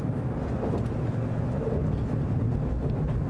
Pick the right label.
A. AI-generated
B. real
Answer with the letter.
B